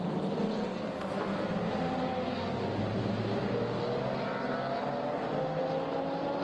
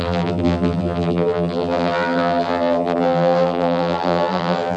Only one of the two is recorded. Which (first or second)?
first